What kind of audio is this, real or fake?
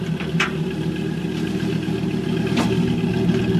real